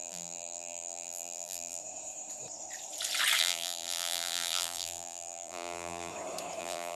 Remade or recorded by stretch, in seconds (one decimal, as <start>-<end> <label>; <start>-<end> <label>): 0.0-1.8 remade; 1.8-3.4 recorded; 3.4-6.1 remade; 6.1-6.6 recorded; 6.6-7.0 remade